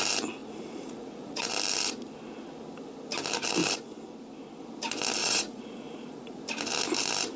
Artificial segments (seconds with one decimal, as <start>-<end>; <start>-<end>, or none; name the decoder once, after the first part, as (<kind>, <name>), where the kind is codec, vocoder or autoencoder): 0.4-1.5 (vocoder, Vocos); 5.2-6.4